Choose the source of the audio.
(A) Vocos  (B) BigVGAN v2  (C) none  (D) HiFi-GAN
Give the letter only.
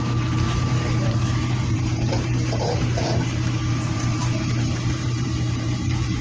B